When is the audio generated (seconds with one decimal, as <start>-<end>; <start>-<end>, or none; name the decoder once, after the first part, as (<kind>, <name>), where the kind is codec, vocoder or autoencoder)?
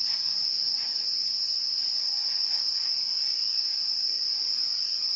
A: 0.9-2.2 (vocoder, BigVGAN v2); 3.3-4.5